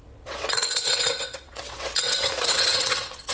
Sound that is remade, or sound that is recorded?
remade